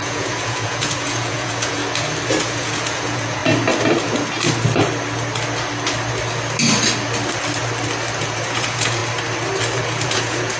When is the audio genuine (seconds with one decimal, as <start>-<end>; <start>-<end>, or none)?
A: 1.8-2.4; 3.4-8.2; 9.0-9.8

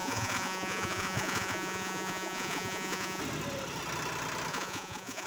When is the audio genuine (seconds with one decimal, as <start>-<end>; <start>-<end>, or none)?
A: 3.2-4.5

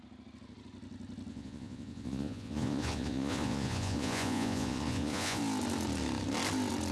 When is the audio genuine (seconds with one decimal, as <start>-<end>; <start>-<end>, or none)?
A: 0.0-1.3; 5.4-6.9

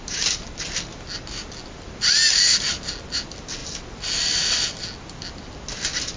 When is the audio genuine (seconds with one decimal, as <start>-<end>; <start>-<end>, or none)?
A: 0.0-6.2